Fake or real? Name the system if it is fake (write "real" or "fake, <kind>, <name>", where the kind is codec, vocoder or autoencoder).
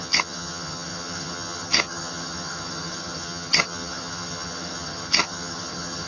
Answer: fake, vocoder, HiFi-GAN